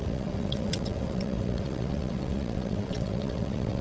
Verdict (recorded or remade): remade